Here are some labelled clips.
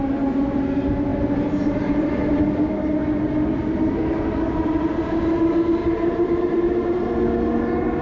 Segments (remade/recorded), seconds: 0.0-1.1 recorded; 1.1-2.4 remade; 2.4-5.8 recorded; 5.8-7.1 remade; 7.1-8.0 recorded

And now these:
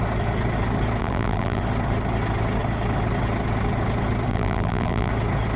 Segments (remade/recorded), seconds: 0.0-1.0 recorded; 1.0-1.6 remade; 1.6-4.3 recorded; 4.3-5.1 remade; 5.1-5.6 recorded

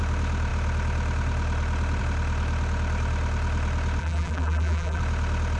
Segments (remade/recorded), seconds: 0.0-4.0 recorded; 4.0-5.0 remade; 5.0-5.6 recorded

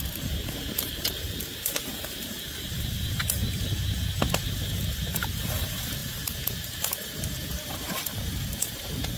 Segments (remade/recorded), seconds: 0.0-3.4 remade; 3.4-4.5 recorded; 4.5-9.2 remade